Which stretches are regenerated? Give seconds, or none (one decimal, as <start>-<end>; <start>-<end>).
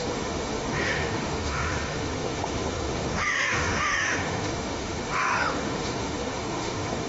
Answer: 0.0-7.1